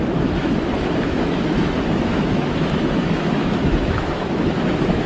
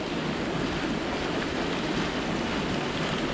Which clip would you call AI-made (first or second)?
first